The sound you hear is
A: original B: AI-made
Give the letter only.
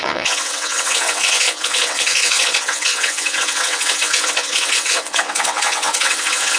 B